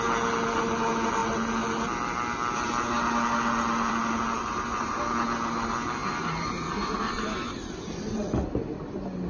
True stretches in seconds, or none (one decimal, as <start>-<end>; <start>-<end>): 0.0-4.4; 5.0-6.0; 7.8-9.3